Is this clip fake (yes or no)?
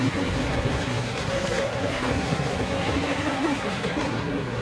yes